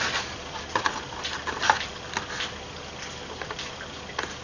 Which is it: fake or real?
real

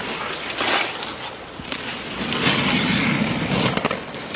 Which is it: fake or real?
real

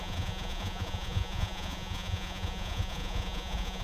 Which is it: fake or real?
fake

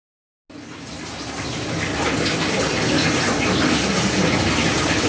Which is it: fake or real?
real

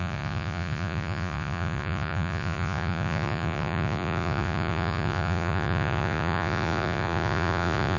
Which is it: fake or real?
fake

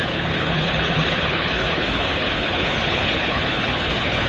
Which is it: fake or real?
fake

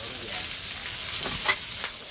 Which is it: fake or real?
real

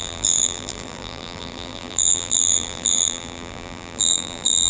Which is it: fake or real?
fake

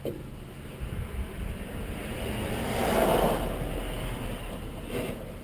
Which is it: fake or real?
real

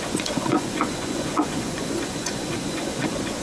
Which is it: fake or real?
fake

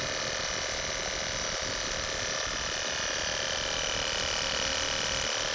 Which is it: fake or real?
real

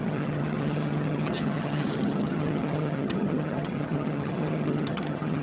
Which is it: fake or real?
fake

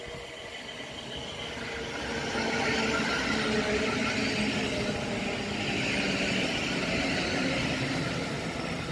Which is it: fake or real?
real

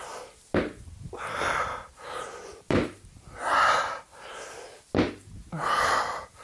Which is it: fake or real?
real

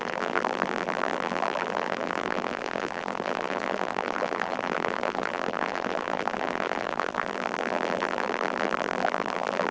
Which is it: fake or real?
fake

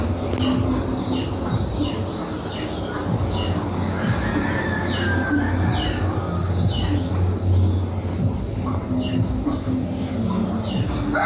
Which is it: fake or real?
real